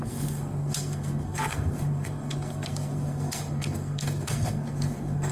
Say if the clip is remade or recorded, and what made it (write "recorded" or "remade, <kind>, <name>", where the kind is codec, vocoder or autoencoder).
remade, codec, SNAC